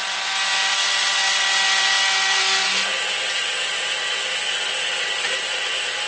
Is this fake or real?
real